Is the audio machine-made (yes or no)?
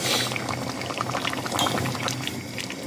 no